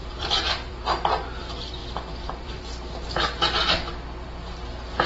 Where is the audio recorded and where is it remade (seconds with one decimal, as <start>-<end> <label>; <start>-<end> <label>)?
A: 0.0-0.8 remade; 0.8-1.8 recorded; 1.8-2.6 remade; 2.6-5.1 recorded